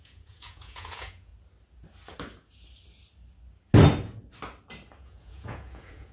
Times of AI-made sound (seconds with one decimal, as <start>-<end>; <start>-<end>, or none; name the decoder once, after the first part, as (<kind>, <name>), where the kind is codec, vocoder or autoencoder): 0.0-1.3 (vocoder, Vocos); 5.0-6.1